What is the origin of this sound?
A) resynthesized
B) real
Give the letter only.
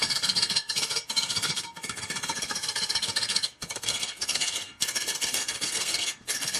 A